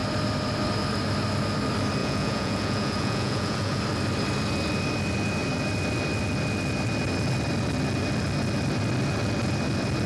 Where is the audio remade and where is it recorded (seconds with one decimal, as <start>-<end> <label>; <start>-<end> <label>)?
0.0-2.0 recorded; 2.0-3.8 remade; 3.8-10.1 recorded